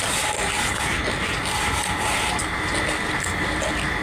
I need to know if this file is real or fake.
real